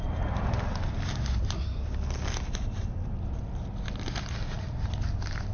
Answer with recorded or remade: recorded